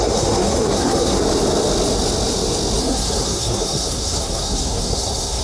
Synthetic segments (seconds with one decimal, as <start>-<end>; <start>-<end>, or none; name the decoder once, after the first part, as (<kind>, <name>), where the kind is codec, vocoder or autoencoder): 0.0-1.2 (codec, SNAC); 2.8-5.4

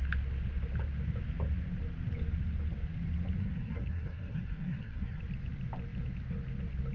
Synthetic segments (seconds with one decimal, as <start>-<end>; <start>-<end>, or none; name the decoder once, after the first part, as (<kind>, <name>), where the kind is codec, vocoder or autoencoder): 3.4-5.2 (codec, SNAC)

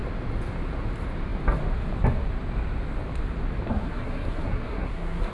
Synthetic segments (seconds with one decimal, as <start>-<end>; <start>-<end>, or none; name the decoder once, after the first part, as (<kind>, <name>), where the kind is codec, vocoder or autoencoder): 3.7-5.3 (codec, SNAC)

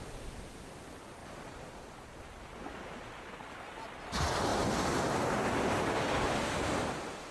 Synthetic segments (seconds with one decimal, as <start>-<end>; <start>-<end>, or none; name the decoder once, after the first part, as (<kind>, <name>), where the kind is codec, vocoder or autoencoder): none

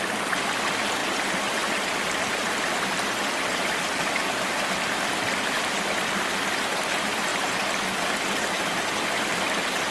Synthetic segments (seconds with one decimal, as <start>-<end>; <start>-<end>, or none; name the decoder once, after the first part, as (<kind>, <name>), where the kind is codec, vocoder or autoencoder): none

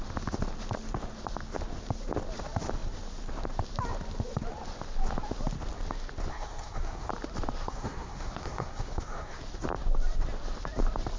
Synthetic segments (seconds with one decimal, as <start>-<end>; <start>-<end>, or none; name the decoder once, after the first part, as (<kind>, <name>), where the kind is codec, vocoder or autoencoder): 6.3-7.1 (codec, SNAC); 7.6-9.4

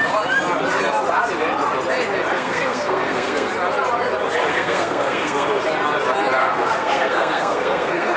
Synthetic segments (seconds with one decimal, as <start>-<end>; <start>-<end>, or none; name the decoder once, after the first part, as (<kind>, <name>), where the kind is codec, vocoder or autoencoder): 2.3-3.5 (codec, SNAC); 4.5-5.6; 6.4-8.2